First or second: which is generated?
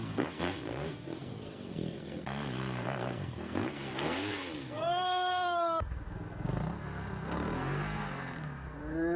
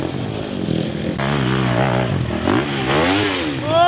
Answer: first